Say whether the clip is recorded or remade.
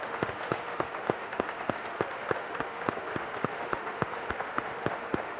remade